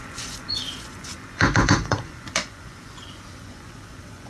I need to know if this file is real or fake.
fake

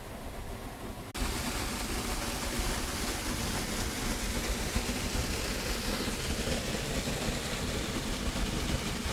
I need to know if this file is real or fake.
real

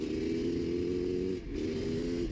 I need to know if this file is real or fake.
real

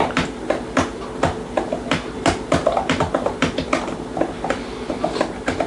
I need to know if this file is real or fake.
real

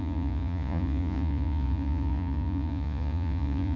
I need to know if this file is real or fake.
fake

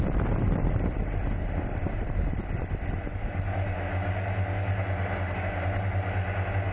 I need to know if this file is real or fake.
real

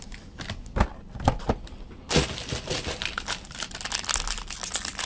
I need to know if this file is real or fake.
real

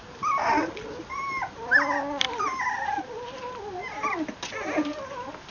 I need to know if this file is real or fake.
real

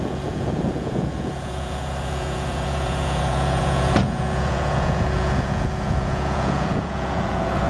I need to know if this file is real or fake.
fake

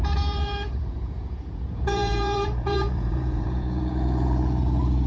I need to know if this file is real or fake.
fake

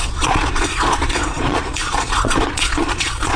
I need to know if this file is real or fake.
fake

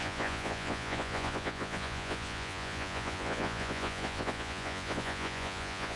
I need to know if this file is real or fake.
fake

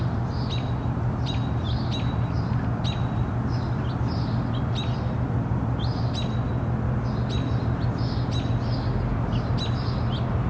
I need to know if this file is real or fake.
real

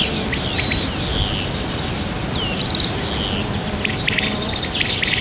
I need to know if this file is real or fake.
real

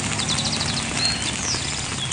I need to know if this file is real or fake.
real